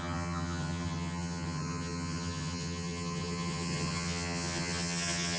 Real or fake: fake